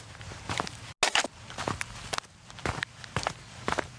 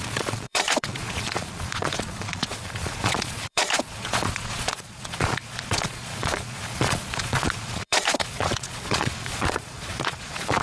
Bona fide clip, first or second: first